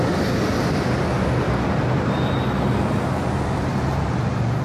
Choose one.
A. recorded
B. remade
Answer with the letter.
A